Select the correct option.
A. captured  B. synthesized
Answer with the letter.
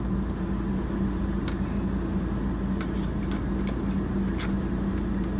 A